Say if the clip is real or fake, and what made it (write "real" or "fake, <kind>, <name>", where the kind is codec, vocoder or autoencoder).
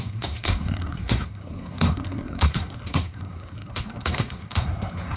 fake, codec, SNAC